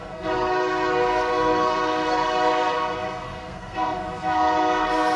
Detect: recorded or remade remade